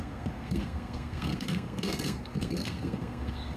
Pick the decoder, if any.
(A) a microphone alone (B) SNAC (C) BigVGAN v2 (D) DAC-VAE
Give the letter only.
B